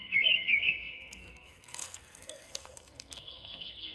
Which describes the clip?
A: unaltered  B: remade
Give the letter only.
B